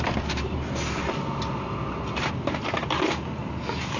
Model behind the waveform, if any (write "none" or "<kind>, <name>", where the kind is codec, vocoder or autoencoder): none